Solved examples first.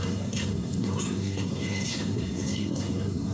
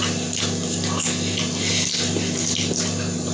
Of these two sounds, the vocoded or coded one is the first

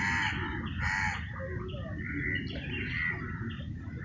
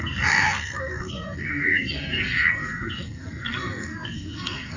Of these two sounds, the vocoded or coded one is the second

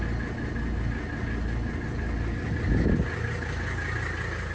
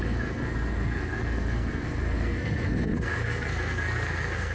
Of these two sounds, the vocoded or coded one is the second